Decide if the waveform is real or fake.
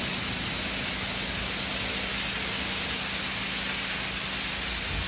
real